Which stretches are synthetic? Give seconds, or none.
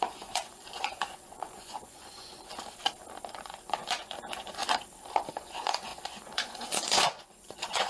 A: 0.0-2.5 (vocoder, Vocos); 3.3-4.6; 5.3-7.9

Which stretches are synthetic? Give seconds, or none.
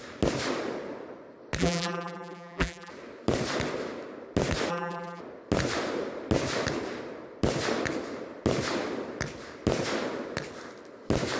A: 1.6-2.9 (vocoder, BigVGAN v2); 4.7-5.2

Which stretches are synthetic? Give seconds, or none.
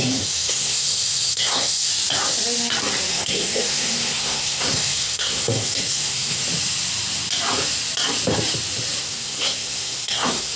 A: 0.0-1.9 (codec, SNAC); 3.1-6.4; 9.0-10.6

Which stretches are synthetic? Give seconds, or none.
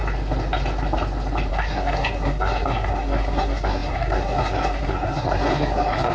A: 1.5-6.1 (codec, SNAC)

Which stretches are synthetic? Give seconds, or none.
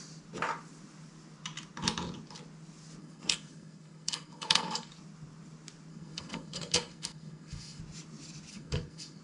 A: 3.0-4.9 (codec, SNAC); 5.9-7.8; 8.5-9.2